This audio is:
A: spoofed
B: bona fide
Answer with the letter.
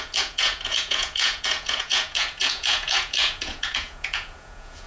A